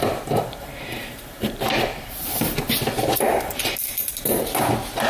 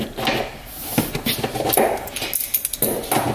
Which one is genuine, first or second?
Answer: second